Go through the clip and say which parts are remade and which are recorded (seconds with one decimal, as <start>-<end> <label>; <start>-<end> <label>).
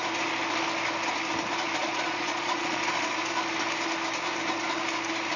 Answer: 0.0-1.8 recorded; 1.8-2.8 remade; 2.8-5.4 recorded